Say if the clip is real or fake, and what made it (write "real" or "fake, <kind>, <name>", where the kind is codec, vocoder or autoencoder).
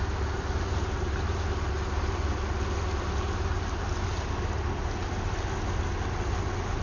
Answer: real